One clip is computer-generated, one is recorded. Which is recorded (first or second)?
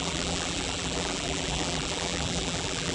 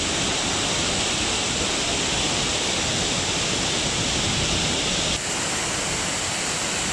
second